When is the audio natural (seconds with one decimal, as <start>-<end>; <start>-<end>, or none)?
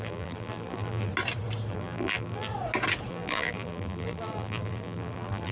1.1-1.7; 2.5-3.1